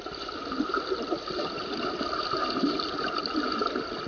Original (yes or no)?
yes